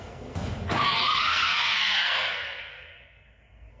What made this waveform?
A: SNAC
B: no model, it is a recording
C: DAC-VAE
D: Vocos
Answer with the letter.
A